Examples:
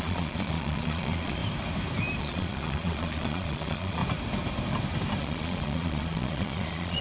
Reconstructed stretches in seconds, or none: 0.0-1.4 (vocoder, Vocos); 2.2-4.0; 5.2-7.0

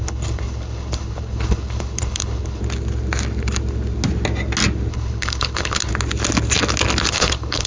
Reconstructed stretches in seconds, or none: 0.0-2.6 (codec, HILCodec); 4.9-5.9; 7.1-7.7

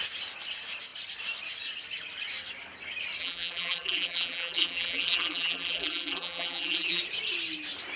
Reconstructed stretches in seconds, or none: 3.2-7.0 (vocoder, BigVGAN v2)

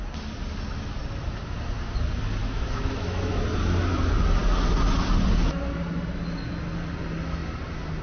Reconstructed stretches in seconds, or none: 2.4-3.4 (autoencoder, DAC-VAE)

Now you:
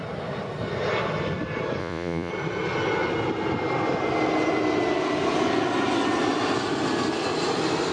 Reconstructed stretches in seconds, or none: 1.8-2.3 (vocoder, Vocos)

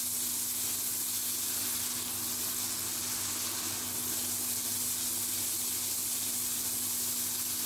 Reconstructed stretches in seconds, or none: none